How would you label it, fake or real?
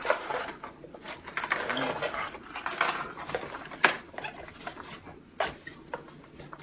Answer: real